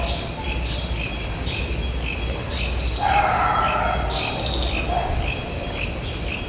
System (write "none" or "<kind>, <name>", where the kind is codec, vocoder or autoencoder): none